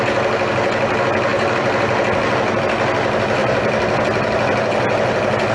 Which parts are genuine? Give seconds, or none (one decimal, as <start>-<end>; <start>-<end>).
0.0-5.5